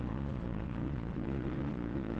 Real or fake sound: fake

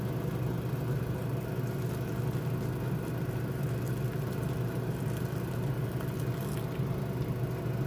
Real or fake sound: real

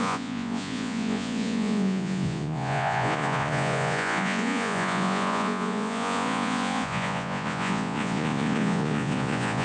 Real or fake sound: fake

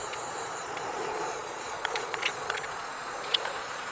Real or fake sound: fake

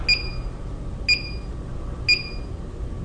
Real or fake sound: real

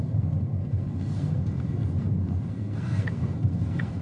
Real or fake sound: fake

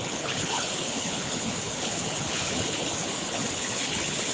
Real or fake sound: fake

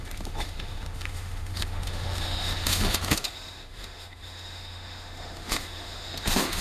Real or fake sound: fake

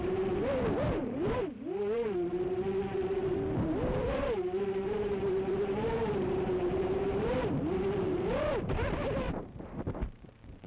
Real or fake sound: fake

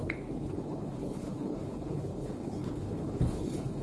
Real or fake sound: fake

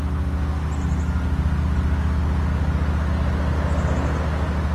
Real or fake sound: real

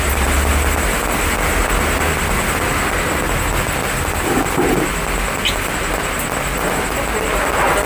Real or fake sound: real